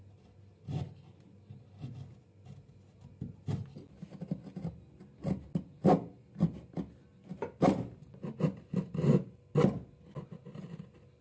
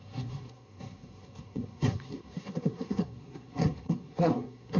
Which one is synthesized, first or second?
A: second